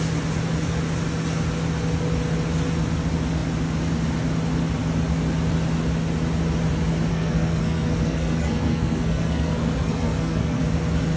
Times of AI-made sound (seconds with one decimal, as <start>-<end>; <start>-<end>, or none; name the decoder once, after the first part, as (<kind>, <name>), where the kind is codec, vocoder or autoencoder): 7.1-10.6 (codec, SNAC)